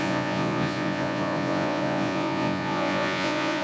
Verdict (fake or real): fake